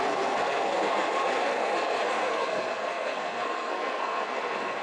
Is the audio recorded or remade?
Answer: remade